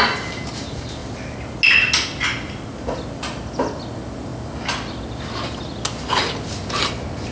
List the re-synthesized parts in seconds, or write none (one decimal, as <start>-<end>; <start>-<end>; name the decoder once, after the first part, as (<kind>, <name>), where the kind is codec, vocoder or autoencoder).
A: none